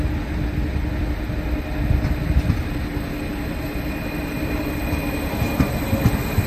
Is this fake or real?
real